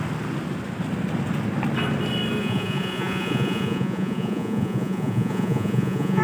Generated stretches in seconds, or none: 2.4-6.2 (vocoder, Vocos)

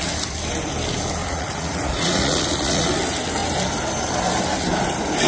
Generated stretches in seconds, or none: 1.2-2.9 (vocoder, Vocos)

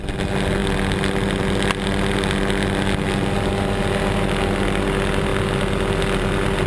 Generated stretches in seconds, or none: none